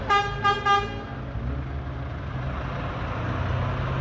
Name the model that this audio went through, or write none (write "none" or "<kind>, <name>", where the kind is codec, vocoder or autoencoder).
none